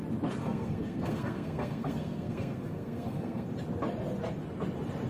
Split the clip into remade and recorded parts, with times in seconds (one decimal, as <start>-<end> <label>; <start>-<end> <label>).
0.0-0.4 recorded; 0.4-3.5 remade; 3.5-5.1 recorded